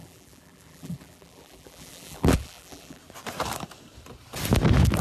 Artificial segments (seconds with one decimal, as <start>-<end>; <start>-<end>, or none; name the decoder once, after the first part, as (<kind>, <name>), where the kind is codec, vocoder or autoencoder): 0.0-3.0 (vocoder, BigVGAN v2)